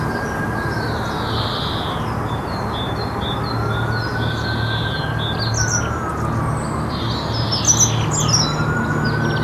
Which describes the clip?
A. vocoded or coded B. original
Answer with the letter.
B